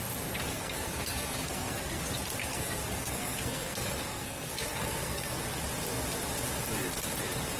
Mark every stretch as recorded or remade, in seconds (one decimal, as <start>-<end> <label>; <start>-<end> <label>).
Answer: 0.0-0.5 recorded; 0.5-2.0 remade; 2.0-2.4 recorded; 2.4-5.4 remade; 5.4-7.6 recorded